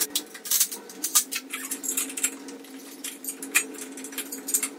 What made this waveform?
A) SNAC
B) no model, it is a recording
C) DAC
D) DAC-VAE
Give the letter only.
B